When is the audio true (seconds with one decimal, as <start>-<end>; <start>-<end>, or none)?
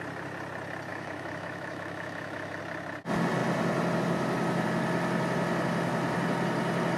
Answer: 0.0-0.9; 2.6-7.0